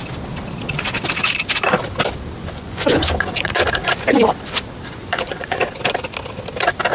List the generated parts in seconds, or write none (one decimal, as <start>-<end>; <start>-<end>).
2.4-3.6; 5.0-5.6